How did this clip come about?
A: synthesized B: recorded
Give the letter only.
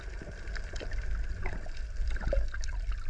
B